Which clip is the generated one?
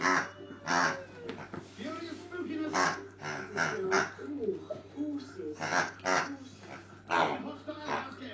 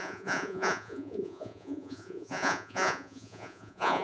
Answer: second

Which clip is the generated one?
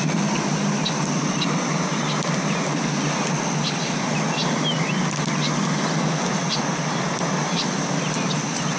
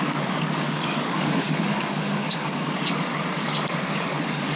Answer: second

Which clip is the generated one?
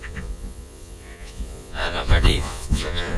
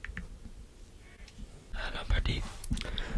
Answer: first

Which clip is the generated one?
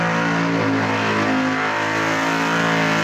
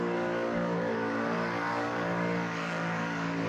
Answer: second